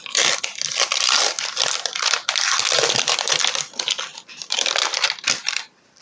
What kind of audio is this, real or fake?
fake